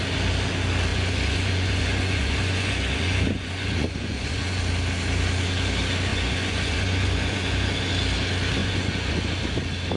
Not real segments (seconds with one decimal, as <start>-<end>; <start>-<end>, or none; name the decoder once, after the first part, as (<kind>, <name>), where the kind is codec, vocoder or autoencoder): 0.9-4.6 (vocoder, Vocos); 6.1-7.7; 8.6-9.3